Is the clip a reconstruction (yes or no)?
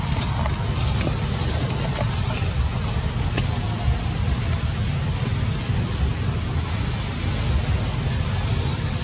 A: no